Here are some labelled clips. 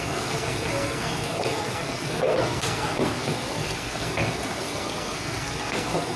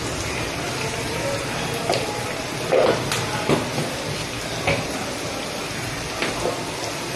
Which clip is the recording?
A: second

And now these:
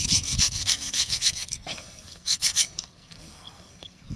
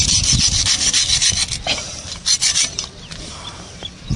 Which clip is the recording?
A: second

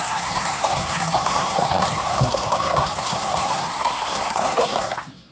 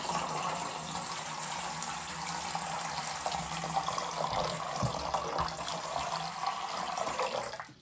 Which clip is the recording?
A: second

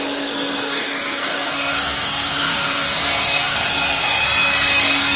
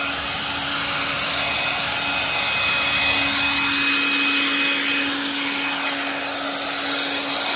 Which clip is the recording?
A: second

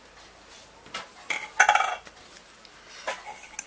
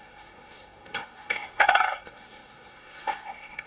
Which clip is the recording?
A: first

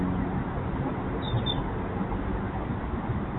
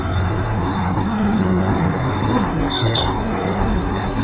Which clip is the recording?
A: first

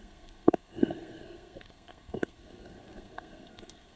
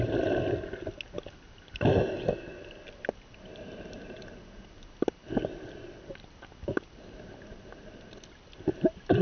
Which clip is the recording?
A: second